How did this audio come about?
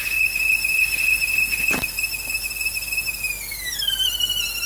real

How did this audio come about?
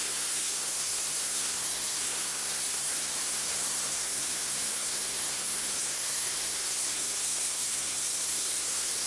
fake